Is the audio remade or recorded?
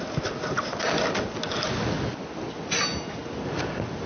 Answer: recorded